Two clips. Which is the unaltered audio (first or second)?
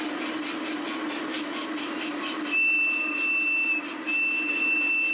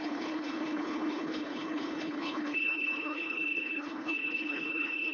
first